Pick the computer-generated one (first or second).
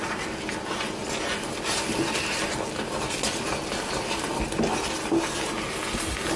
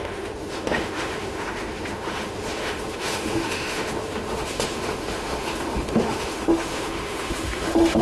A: second